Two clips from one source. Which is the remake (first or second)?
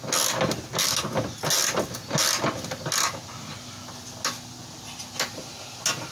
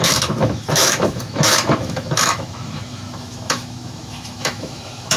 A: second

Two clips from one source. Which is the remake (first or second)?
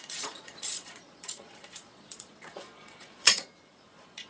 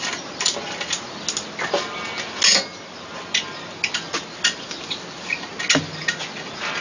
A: first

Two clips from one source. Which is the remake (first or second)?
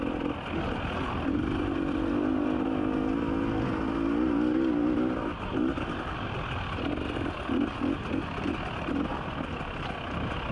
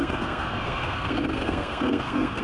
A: second